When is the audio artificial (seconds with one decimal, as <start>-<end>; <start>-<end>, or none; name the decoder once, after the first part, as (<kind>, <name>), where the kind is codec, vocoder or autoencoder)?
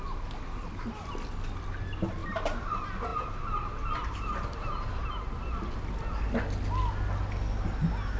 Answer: none